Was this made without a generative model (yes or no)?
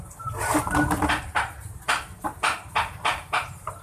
no